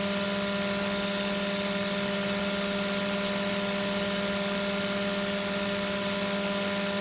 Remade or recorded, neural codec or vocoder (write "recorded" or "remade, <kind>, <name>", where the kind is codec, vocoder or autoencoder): recorded